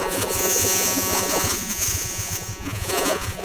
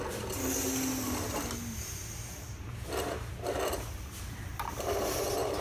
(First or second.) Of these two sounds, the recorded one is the second